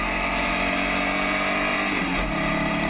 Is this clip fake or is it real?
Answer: real